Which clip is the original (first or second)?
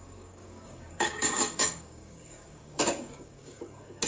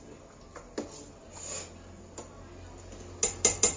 second